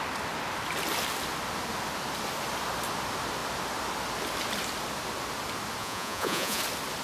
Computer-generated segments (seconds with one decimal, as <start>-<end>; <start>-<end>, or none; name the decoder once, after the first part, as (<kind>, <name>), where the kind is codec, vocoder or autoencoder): 5.8-6.6 (vocoder, Vocos)